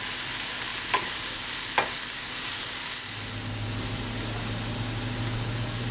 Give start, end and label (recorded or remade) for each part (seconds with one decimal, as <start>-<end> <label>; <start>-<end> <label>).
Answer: 0.0-5.9 recorded